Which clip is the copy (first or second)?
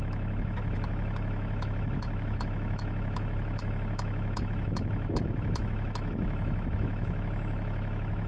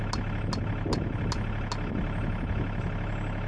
first